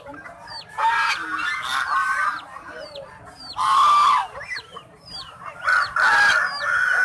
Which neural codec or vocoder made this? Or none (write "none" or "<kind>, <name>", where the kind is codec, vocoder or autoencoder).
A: none